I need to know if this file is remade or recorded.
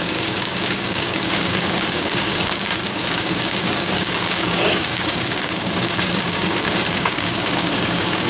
remade